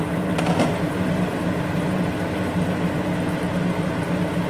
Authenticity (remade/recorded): recorded